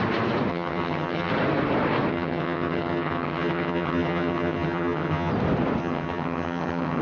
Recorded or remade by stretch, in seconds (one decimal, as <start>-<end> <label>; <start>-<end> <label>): 0.0-0.5 recorded; 0.5-1.3 remade; 1.3-2.1 recorded; 2.1-5.3 remade; 5.3-5.8 recorded; 5.8-7.0 remade